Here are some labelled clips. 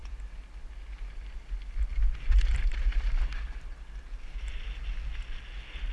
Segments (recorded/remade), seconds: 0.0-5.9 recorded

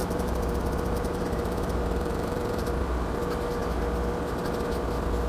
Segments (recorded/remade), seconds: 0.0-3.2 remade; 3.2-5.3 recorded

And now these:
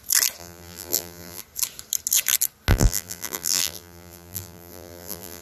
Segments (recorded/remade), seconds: 0.0-0.4 recorded; 0.4-1.4 remade; 1.4-2.7 recorded; 2.7-5.4 remade